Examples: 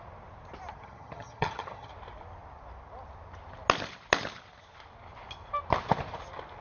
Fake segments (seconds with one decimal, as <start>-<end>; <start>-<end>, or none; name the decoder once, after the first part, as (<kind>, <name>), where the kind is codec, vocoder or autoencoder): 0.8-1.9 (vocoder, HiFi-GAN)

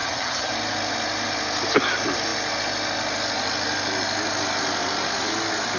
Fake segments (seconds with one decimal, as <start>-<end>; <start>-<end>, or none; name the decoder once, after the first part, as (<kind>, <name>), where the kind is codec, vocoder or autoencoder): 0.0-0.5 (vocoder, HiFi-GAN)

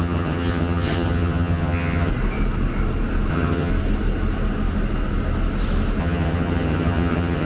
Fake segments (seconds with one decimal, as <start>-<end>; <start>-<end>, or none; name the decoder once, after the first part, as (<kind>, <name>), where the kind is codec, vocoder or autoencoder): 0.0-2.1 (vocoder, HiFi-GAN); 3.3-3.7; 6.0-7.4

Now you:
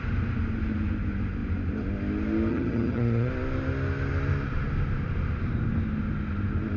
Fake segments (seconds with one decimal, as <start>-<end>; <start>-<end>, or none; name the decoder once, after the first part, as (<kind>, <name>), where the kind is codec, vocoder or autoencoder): 2.5-3.3 (vocoder, HiFi-GAN)

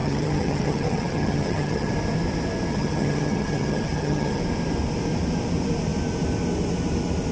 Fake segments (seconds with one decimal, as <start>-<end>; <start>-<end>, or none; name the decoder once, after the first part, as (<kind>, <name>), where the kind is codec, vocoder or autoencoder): 0.0-1.9 (vocoder, HiFi-GAN); 2.7-4.4

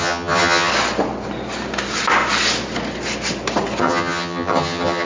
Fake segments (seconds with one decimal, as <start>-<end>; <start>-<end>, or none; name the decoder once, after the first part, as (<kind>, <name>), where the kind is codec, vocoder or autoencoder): 0.0-0.7 (vocoder, HiFi-GAN); 3.8-5.1

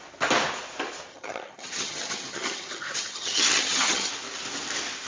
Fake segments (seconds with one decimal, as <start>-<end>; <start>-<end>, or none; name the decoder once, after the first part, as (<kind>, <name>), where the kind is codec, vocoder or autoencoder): 1.1-4.1 (vocoder, HiFi-GAN)

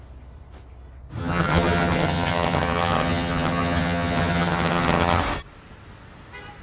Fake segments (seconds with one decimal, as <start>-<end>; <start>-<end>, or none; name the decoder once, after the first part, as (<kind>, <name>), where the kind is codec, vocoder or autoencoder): 1.2-5.2 (vocoder, HiFi-GAN)